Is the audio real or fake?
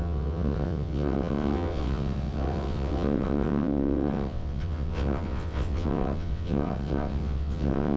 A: fake